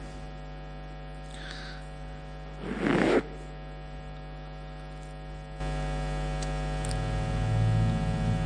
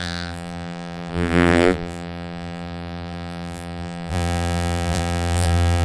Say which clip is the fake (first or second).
second